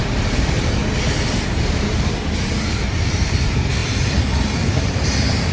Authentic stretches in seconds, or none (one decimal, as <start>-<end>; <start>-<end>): 0.8-1.6